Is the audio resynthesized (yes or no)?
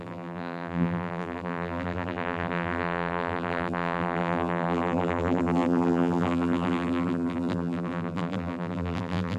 yes